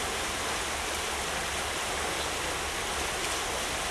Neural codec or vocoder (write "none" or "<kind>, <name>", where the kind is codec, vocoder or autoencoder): none